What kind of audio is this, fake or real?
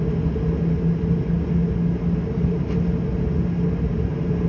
real